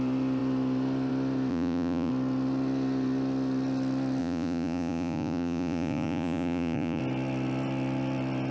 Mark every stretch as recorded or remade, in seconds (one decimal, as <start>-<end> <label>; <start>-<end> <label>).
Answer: 0.0-1.5 recorded; 1.5-2.1 remade; 2.1-4.2 recorded; 4.2-7.0 remade; 7.0-8.5 recorded